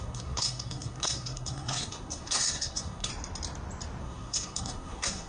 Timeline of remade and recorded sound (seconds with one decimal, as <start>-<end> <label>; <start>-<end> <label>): 0.0-3.1 remade; 3.1-4.0 recorded; 4.0-5.3 remade

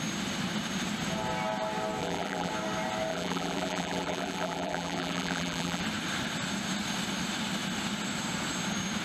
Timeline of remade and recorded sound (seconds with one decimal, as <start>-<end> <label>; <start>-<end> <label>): 0.0-2.0 recorded; 2.0-2.5 remade; 2.5-3.1 recorded; 3.1-5.8 remade; 5.8-9.0 recorded

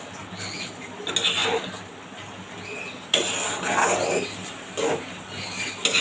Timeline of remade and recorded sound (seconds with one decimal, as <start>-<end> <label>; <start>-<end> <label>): 0.0-6.0 recorded

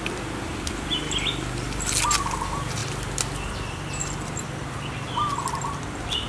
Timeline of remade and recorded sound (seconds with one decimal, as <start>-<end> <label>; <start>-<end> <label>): 0.0-6.3 recorded

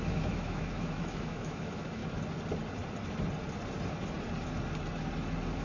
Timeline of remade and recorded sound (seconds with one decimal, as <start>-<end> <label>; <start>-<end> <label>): 0.0-2.0 remade; 2.0-5.6 recorded

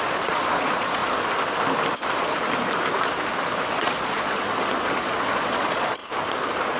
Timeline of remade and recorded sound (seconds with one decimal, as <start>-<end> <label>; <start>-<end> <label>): 0.0-1.0 remade; 1.0-3.7 recorded; 3.7-4.5 remade; 4.5-5.0 recorded; 5.0-6.0 remade; 6.0-6.8 recorded